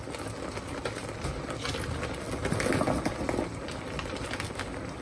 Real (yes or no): yes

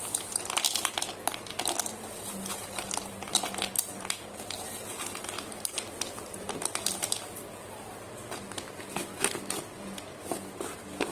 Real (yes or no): yes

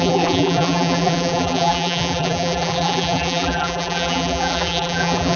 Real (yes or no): no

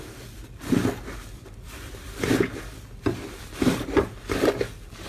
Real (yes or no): yes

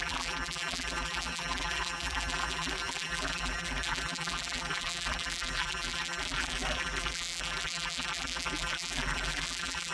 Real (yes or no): no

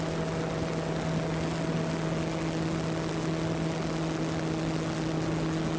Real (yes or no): yes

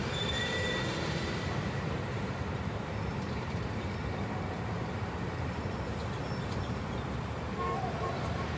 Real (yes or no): no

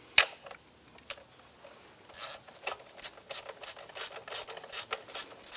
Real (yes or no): yes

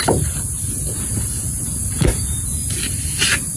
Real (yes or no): no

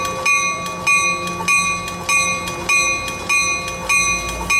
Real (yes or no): yes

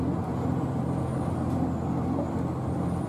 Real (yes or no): yes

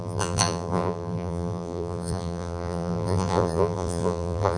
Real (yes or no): no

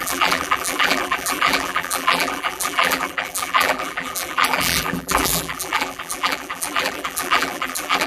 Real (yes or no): no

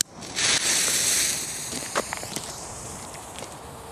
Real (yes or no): no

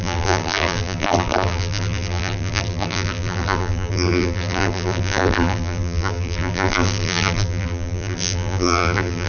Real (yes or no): no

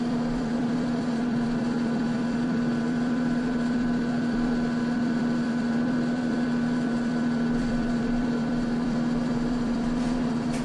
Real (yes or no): no